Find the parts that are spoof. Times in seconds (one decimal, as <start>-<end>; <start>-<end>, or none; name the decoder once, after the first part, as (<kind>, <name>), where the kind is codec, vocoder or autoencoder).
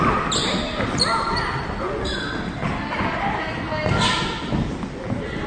none